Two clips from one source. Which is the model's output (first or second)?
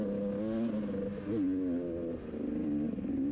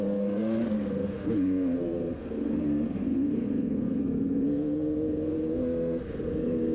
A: second